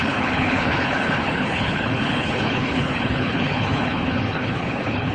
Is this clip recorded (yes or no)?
no